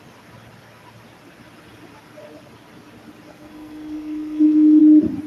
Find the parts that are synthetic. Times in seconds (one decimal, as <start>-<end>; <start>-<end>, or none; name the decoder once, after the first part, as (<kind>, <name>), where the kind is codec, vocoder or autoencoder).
3.3-4.8 (codec, SNAC)